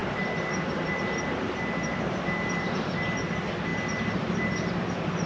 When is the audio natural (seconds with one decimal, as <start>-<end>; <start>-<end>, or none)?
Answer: 0.0-5.3